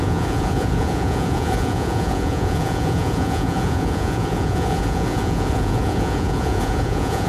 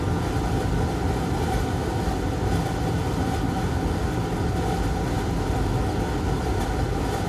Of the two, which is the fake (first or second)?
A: first